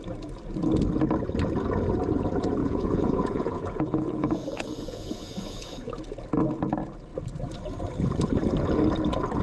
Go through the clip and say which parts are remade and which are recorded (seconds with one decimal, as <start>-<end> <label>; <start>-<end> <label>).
0.0-2.6 recorded; 2.6-5.9 remade; 5.9-9.4 recorded